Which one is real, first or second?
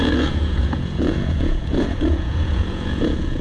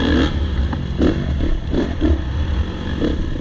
second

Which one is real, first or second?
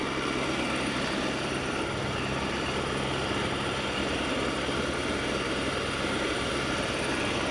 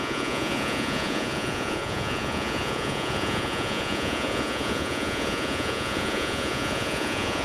first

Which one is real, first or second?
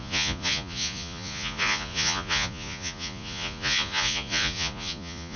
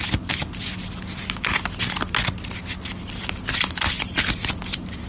second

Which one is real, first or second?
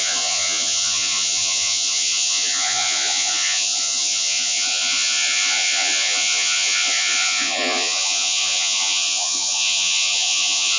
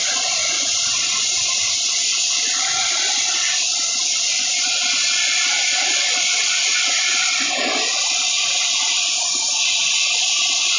second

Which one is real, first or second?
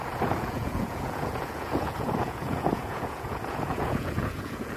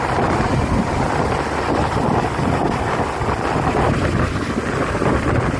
second